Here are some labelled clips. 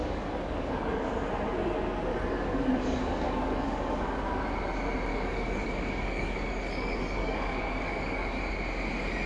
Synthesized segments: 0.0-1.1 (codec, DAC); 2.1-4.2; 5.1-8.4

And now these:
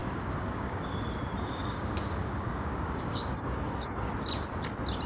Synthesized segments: 0.0-0.8 (codec, DAC); 1.4-4.1

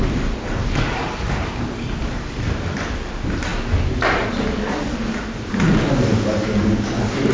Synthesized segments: none

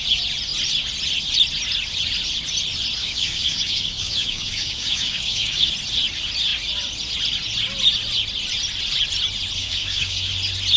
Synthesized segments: 3.0-5.7 (codec, DAC); 9.6-10.3